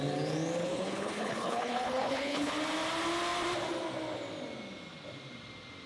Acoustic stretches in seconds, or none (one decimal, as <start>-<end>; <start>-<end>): 0.0-0.6; 2.5-5.9